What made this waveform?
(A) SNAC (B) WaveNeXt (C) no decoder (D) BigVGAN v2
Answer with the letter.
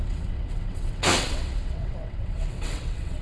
B